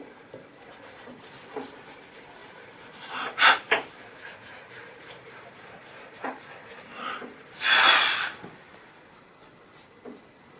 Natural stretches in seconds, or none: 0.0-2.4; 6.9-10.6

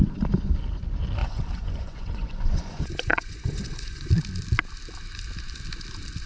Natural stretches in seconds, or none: 0.0-1.2; 4.1-6.3

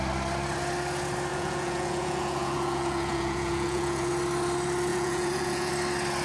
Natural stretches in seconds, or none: 0.0-1.3; 4.1-4.9; 5.7-6.2

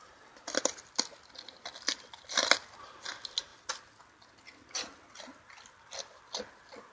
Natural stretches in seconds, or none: 0.0-6.9

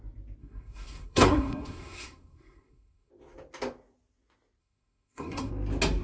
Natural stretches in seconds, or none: 0.0-0.4; 3.1-4.6; 5.5-6.0

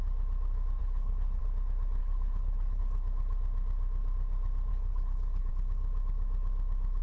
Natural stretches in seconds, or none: 0.0-0.8; 1.4-2.0; 2.8-4.7; 5.5-7.0